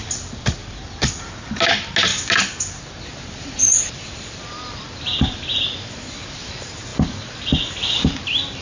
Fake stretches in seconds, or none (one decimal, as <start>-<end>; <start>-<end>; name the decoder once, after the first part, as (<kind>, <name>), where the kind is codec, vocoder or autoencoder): 0.6-1.5 (vocoder, BigVGAN v2); 2.1-4.6